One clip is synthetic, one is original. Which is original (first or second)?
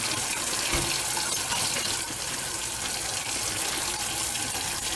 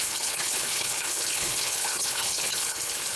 first